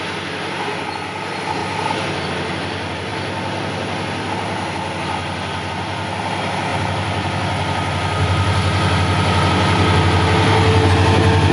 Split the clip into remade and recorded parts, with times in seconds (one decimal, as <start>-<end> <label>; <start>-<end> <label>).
0.0-11.5 recorded